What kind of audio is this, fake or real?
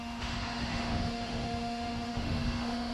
fake